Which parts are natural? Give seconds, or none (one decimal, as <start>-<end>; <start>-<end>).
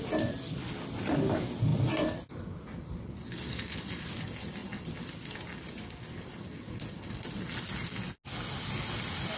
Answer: 0.0-9.4